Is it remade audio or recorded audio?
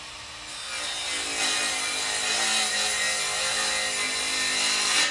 recorded